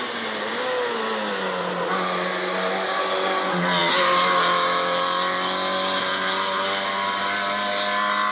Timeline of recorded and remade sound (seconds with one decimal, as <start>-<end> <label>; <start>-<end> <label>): 0.0-8.3 recorded